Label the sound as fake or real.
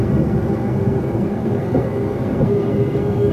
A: fake